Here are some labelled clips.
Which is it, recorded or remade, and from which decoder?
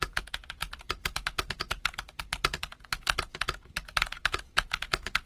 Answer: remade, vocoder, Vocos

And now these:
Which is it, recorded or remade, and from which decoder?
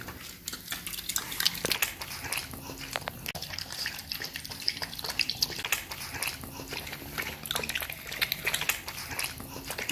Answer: recorded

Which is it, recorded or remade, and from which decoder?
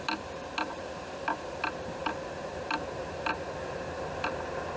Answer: recorded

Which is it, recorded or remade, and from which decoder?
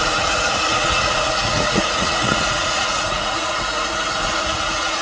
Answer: remade, vocoder, Vocos